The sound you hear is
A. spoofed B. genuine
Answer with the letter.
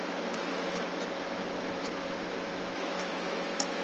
A